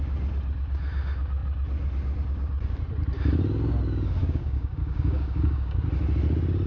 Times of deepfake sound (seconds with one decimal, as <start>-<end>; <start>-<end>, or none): 4.2-5.9

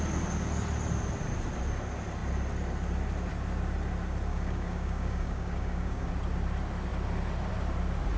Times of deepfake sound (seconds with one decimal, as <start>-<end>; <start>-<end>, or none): 4.3-6.1

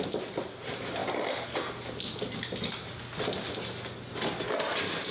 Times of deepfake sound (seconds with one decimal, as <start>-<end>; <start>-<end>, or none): none

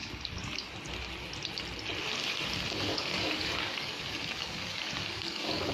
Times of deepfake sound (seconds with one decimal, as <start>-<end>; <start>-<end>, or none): 0.0-0.7; 2.9-5.7

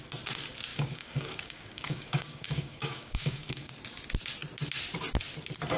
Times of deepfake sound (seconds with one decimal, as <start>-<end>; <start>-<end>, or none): 0.7-3.7